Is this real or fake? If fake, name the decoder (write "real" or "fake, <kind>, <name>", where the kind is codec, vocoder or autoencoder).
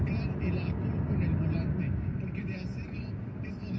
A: real